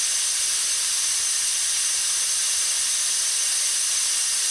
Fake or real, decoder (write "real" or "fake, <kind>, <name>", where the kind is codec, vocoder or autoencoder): real